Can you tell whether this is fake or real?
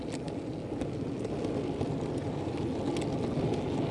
real